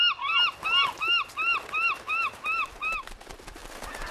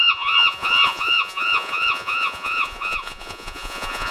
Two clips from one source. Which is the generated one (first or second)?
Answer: second